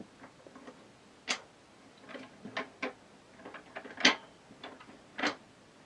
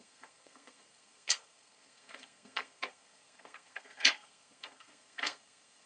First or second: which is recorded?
first